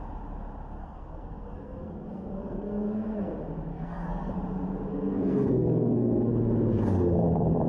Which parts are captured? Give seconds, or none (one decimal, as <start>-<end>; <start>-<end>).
0.0-0.8; 3.3-3.7; 4.3-4.9; 6.3-7.7